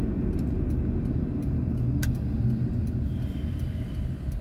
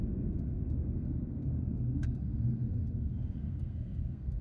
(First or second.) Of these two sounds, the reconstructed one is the second